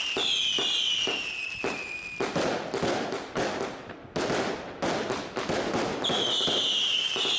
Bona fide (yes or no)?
yes